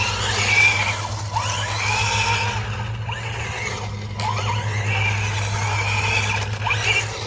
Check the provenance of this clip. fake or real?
real